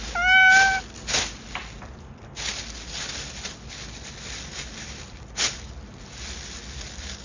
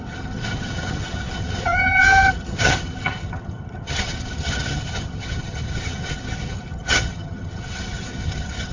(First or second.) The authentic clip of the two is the first